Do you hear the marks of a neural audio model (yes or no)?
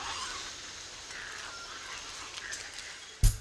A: no